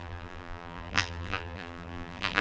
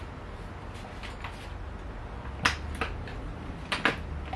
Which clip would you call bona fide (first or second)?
second